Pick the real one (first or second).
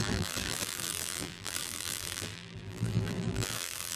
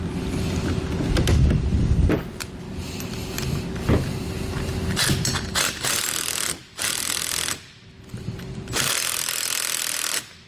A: second